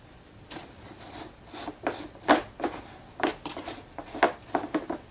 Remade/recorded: recorded